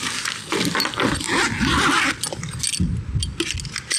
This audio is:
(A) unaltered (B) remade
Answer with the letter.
A